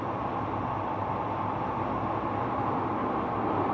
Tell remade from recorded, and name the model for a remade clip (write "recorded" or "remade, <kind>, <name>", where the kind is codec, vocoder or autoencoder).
recorded